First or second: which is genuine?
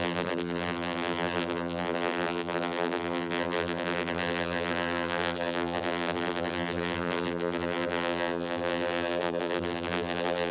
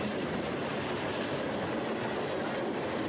second